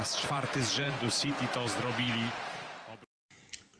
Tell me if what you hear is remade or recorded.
remade